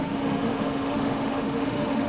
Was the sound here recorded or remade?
remade